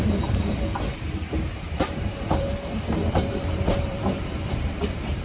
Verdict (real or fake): fake